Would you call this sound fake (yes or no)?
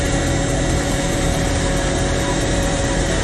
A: yes